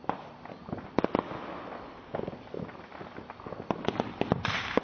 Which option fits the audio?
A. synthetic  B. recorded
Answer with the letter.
B